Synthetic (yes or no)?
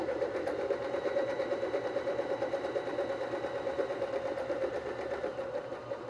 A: yes